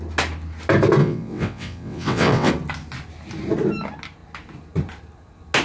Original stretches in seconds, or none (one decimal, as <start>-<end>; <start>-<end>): 0.0-1.0; 2.5-5.6